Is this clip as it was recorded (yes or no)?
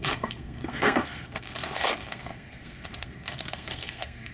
no